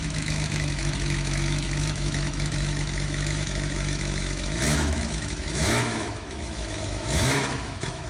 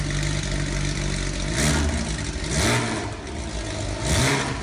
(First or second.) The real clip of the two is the second